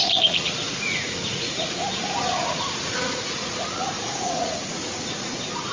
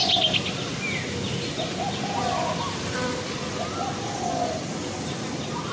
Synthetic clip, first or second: first